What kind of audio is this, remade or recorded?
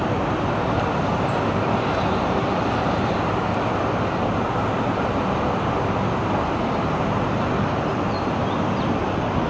recorded